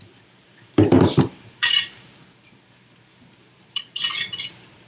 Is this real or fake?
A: fake